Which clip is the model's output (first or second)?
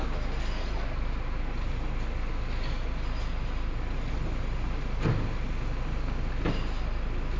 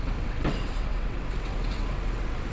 second